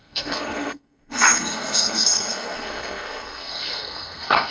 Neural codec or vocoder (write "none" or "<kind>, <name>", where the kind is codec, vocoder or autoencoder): codec, SNAC